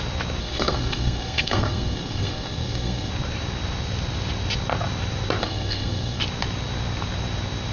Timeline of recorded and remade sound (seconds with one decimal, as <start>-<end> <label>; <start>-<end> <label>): 0.0-0.4 recorded; 0.4-3.1 remade; 3.1-5.4 recorded; 5.4-6.2 remade; 6.2-7.7 recorded